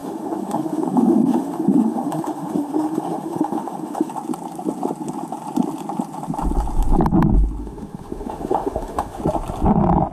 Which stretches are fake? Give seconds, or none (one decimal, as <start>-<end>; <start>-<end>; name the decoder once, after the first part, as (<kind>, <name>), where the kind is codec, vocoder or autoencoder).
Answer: 0.0-4.1 (autoencoder, DAC-VAE); 7.6-9.2